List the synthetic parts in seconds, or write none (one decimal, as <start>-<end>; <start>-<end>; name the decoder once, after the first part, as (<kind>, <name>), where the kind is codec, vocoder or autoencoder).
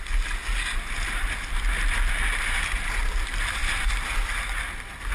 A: none